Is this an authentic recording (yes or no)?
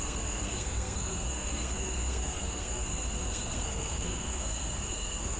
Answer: no